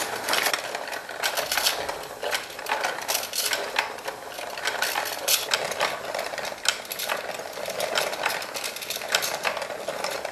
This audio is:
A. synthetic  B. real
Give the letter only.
B